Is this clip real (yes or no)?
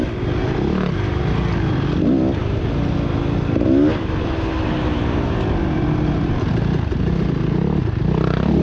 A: yes